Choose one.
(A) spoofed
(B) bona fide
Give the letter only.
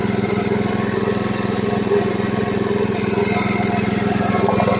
B